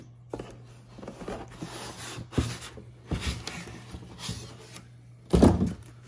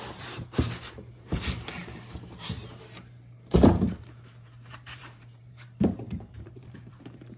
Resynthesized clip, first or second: second